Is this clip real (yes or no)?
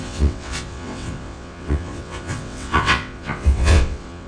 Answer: no